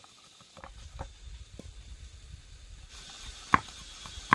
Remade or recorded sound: recorded